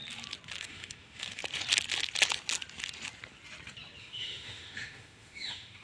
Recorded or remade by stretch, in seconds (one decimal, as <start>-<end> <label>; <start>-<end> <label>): 0.0-0.6 recorded; 0.6-1.4 remade; 1.4-4.0 recorded; 4.0-5.8 remade